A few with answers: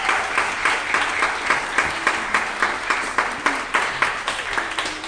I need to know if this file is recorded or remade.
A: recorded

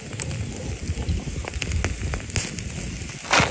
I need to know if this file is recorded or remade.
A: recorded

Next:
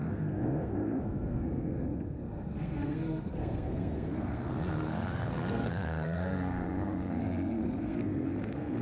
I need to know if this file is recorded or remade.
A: remade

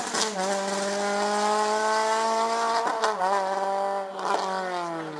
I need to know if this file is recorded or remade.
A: recorded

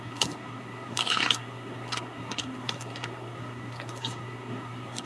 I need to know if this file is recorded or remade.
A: remade